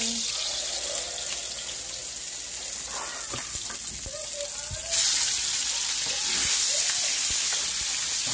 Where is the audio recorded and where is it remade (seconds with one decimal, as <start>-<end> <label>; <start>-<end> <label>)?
0.0-8.3 recorded